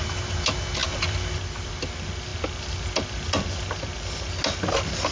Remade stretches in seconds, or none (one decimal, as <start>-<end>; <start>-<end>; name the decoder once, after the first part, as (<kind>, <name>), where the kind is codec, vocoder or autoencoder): none